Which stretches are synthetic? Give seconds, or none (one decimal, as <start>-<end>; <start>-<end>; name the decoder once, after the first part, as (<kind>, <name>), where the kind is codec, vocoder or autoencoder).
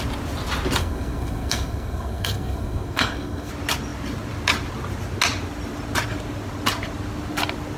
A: 0.8-3.5 (codec, SNAC)